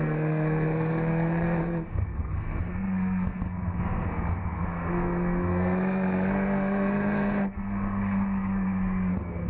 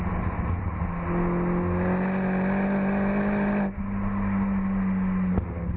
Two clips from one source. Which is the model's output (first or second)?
first